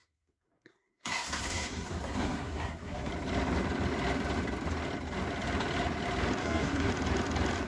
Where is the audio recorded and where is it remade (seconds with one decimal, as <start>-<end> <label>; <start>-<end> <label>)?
0.0-3.1 remade; 3.1-6.4 recorded; 6.4-6.9 remade; 6.9-7.7 recorded